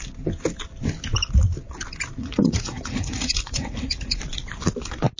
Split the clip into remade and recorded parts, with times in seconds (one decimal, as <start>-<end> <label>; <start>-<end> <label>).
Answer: 0.0-2.2 recorded; 2.2-4.2 remade; 4.2-5.2 recorded